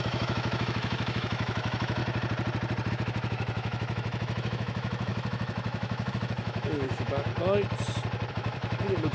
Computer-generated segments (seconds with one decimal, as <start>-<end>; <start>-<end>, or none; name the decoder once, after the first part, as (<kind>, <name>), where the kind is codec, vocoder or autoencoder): 0.0-2.0 (autoencoder, DAC-VAE); 2.9-7.3; 8.3-9.1